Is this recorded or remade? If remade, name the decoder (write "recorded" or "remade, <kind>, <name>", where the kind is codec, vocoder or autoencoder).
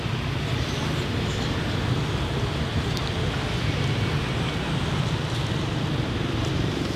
recorded